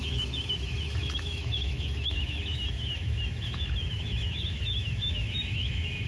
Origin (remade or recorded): remade